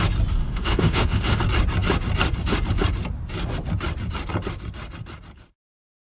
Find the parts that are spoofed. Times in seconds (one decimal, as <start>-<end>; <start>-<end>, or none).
0.4-1.4